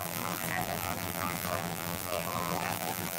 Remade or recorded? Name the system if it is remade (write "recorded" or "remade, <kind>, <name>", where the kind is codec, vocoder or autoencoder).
remade, vocoder, BigVGAN v2